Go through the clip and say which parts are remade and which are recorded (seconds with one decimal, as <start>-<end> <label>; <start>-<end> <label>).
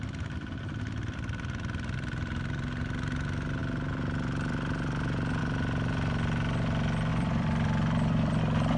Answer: 0.0-7.1 recorded; 7.1-8.4 remade; 8.4-8.8 recorded